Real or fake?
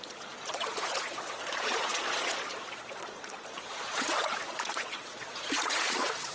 fake